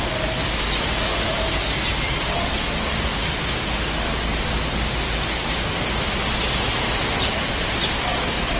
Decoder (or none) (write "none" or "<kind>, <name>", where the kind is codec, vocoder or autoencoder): none